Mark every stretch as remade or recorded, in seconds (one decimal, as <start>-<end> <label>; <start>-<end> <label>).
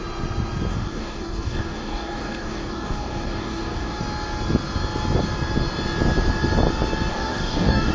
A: 0.0-0.7 recorded; 0.7-4.0 remade; 4.0-7.1 recorded; 7.1-7.9 remade